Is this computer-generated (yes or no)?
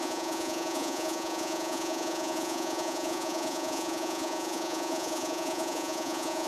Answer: yes